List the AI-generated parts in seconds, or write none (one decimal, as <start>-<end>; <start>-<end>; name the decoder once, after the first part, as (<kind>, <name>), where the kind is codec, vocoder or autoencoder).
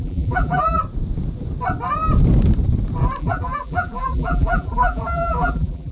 0.0-0.8 (vocoder, BigVGAN v2); 3.2-5.9